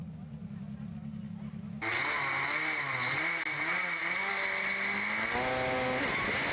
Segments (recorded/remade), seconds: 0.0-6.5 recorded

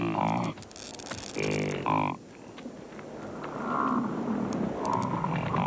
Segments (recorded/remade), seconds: 0.0-0.9 recorded; 0.9-4.3 remade; 4.3-5.7 recorded

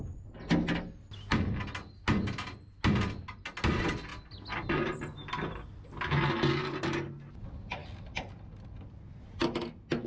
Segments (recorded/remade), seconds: 0.0-10.1 recorded

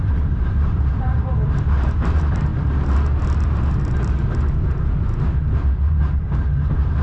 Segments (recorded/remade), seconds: 0.0-2.5 remade; 2.5-4.7 recorded; 4.7-7.0 remade

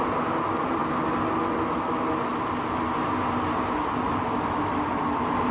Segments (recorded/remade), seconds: 0.0-0.8 remade; 0.8-4.1 recorded; 4.1-5.5 remade

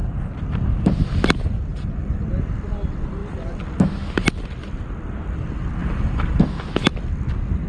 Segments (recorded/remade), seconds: 0.0-1.7 recorded; 1.7-2.2 remade; 2.2-5.8 recorded; 5.8-6.4 remade; 6.4-7.7 recorded